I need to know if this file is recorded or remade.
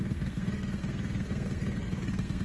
remade